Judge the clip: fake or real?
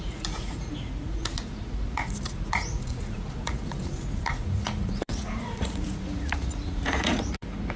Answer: fake